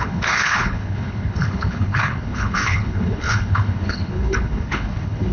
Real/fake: fake